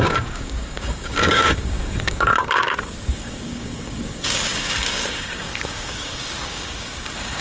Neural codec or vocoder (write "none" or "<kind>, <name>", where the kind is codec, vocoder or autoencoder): codec, DAC